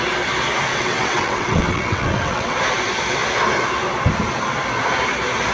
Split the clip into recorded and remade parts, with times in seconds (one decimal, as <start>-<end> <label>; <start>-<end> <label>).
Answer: 0.0-0.7 recorded; 0.7-2.6 remade; 2.6-5.5 recorded